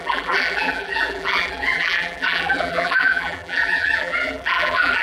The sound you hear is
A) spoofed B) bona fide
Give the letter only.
A